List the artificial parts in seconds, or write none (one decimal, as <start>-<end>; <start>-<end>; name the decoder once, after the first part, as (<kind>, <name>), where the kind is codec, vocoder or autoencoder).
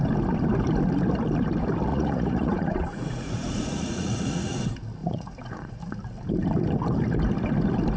1.9-4.6 (vocoder, Vocos); 5.0-5.9